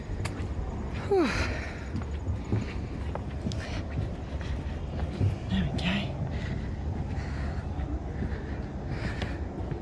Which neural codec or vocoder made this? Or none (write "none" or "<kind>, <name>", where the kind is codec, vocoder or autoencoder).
none